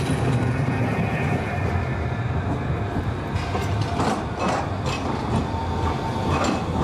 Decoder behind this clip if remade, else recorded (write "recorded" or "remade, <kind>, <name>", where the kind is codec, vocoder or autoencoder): recorded